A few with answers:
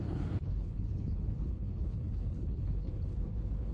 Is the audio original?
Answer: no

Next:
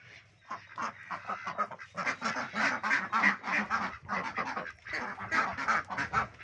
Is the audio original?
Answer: yes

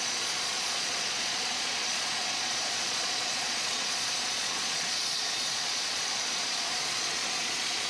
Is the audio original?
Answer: no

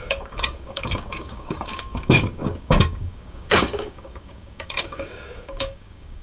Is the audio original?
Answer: no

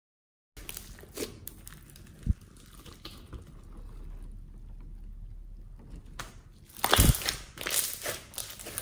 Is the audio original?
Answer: yes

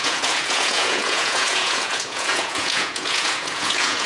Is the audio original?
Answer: no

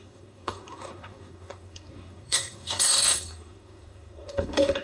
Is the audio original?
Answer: no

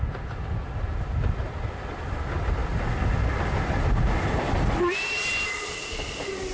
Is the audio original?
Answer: yes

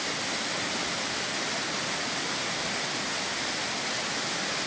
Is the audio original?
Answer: yes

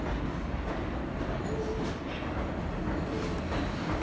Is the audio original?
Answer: yes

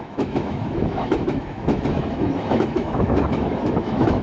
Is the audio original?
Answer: no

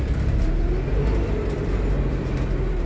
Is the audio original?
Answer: yes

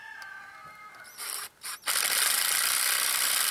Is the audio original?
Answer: yes